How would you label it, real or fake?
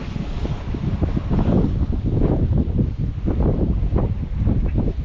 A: real